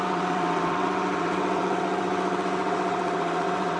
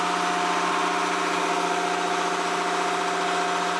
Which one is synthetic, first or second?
first